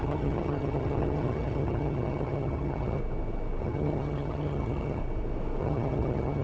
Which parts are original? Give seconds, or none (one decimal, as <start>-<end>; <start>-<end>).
3.0-3.6; 5.0-5.6